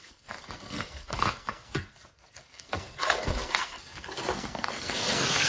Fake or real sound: fake